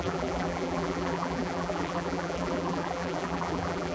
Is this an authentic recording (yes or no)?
no